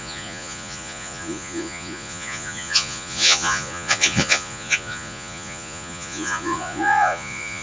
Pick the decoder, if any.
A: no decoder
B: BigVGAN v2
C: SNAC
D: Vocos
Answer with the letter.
D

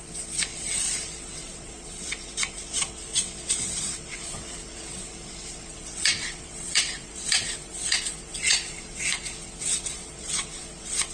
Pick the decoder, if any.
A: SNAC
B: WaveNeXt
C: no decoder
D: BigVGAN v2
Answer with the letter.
B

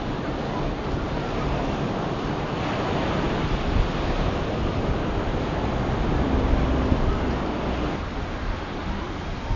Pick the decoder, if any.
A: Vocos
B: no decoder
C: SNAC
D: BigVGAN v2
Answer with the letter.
B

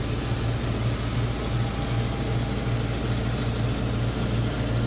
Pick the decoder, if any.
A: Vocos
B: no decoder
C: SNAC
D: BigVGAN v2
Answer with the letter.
B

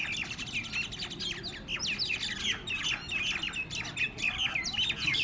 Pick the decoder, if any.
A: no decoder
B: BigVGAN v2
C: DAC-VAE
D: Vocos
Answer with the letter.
A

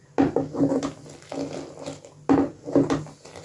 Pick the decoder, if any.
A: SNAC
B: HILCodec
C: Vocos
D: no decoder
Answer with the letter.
D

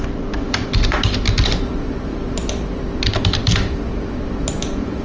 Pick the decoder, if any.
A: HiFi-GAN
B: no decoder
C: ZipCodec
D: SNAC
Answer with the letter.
B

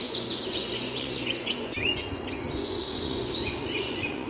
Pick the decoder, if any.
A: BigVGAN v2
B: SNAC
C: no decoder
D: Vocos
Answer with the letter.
D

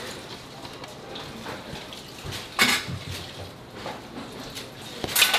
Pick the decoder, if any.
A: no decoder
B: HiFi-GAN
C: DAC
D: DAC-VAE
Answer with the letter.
A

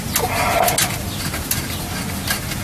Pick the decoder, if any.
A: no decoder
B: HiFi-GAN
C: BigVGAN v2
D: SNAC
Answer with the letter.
A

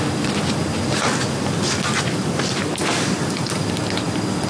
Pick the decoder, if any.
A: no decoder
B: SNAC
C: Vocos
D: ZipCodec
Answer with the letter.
A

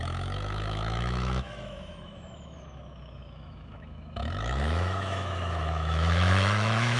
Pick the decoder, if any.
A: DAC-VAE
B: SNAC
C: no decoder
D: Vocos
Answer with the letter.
A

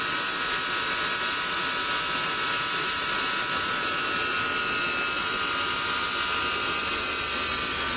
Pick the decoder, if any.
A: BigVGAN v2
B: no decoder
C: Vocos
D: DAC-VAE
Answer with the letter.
B